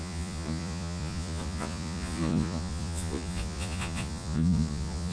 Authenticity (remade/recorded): remade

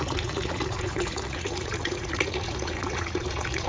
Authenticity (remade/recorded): remade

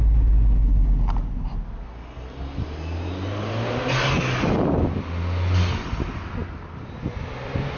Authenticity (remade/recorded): recorded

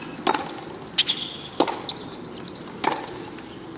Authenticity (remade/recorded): recorded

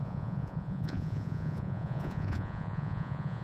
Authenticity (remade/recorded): remade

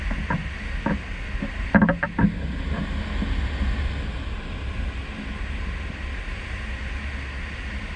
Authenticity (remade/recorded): recorded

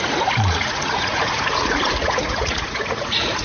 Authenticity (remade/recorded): remade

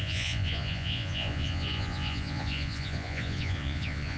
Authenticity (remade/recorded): remade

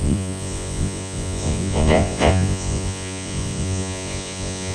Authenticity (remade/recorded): remade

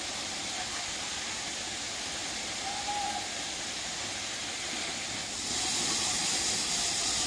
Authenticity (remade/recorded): recorded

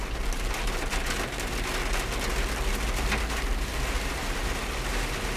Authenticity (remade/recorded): recorded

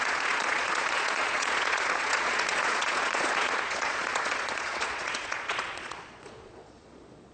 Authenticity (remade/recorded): remade